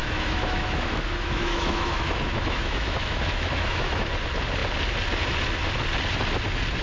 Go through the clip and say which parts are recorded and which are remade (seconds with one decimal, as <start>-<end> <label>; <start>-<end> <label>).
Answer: 0.0-4.1 remade; 4.1-6.8 recorded